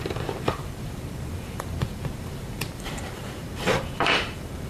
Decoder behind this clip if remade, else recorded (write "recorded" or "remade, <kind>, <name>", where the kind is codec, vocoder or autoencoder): remade, vocoder, BigVGAN v2